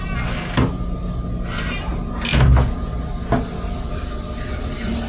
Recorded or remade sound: recorded